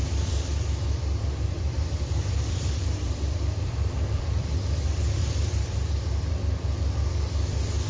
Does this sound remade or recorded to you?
remade